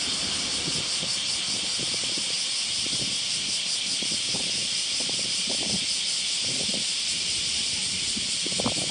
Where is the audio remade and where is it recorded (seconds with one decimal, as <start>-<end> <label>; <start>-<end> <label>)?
0.0-2.0 recorded; 2.0-3.9 remade; 3.9-4.6 recorded; 4.6-6.2 remade; 6.2-8.9 recorded

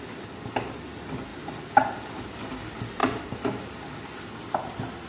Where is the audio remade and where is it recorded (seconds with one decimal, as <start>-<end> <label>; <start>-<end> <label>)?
0.0-3.0 recorded; 3.0-3.7 remade; 3.7-5.1 recorded

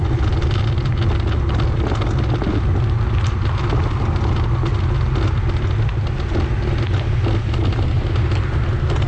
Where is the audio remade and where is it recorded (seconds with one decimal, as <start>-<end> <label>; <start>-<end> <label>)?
0.0-0.9 remade; 0.9-9.1 recorded